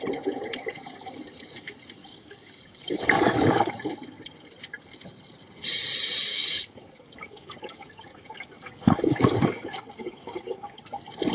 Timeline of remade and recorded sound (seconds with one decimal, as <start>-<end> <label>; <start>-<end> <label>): 0.0-2.0 recorded; 2.0-3.7 remade; 3.7-6.3 recorded; 6.3-10.8 remade; 10.8-11.3 recorded